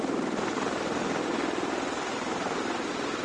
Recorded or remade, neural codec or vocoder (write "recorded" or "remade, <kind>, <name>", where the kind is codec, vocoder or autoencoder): recorded